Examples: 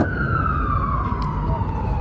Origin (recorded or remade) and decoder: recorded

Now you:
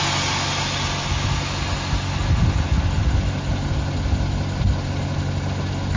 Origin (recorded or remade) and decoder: recorded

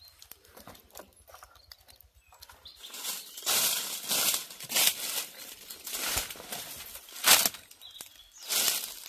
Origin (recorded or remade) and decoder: recorded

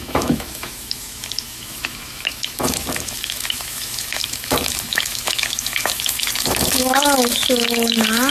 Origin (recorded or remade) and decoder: remade, autoencoder, DAC-VAE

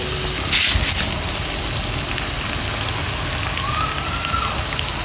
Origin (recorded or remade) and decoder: recorded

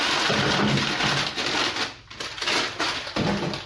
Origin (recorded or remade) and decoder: recorded